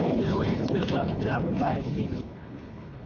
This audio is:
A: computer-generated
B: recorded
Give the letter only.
A